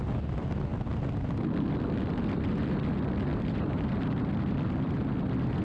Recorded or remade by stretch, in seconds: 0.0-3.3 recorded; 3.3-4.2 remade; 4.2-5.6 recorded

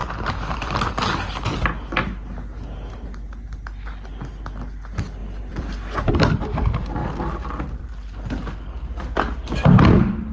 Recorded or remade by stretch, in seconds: 0.0-0.9 remade; 0.9-5.2 recorded; 5.2-6.1 remade; 6.1-10.3 recorded

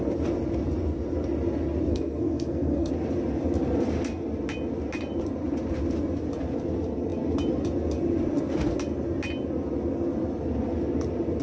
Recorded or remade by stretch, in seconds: 0.0-1.9 recorded; 1.9-2.9 remade; 2.9-11.4 recorded

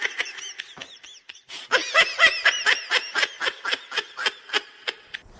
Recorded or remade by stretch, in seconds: 0.0-5.4 remade

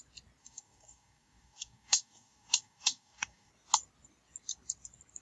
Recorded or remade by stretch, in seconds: 0.0-0.4 recorded; 0.4-3.5 remade; 3.5-5.2 recorded

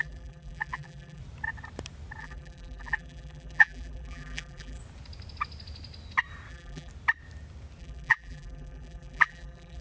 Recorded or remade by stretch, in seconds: 0.0-1.2 remade; 1.2-2.2 recorded; 2.2-4.8 remade; 4.8-6.5 recorded; 6.5-6.9 remade; 6.9-7.8 recorded; 7.8-9.8 remade